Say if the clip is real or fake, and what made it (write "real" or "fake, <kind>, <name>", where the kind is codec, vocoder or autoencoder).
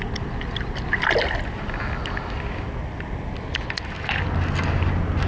real